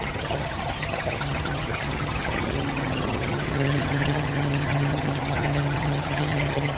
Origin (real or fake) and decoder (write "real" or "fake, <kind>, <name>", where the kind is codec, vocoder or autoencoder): fake, vocoder, HiFi-GAN